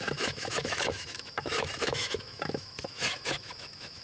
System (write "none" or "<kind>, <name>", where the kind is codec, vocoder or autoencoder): autoencoder, DAC-VAE